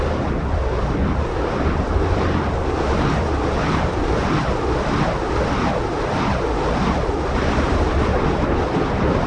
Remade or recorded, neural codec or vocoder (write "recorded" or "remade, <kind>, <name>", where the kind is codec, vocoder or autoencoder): recorded